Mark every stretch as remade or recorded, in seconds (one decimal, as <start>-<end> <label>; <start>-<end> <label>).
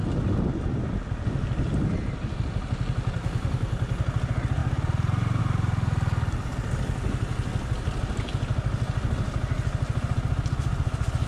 0.0-0.8 remade; 0.8-11.3 recorded